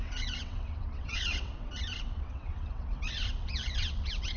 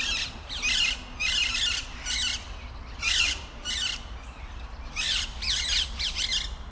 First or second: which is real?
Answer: second